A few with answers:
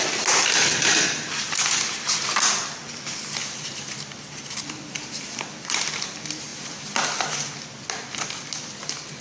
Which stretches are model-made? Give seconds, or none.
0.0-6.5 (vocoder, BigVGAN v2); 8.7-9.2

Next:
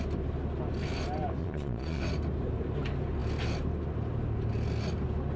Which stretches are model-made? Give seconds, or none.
1.4-2.0 (vocoder, Vocos)

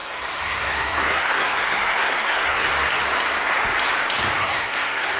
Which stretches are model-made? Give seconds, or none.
0.0-2.7 (codec, SNAC); 4.4-5.2

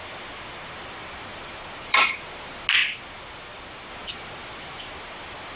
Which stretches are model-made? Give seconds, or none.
0.0-2.0 (vocoder, BigVGAN v2); 2.8-3.9

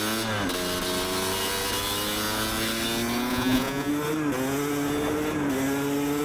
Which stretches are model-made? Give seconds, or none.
3.3-3.9 (vocoder, Vocos)

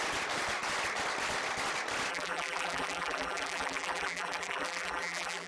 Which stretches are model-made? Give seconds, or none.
2.1-5.5 (vocoder, BigVGAN v2)